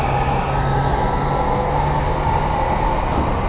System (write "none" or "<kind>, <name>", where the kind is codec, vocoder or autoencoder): none